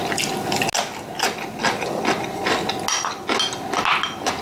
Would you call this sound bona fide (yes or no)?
yes